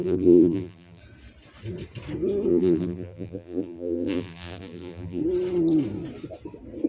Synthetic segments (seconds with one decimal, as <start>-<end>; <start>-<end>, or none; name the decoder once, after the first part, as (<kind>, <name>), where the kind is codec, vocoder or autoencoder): 0.0-1.0 (vocoder, BigVGAN v2); 2.5-5.2